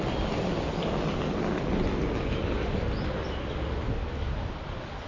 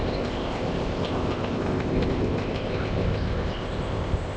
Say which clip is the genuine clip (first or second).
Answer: first